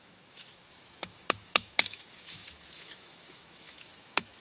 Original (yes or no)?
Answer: no